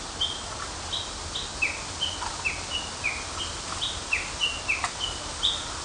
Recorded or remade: recorded